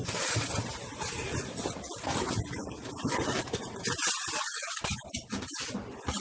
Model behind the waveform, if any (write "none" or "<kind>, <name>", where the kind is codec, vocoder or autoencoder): none